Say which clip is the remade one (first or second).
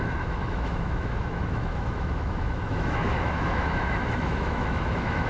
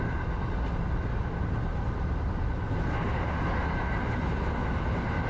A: first